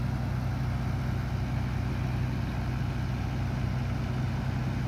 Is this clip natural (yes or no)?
yes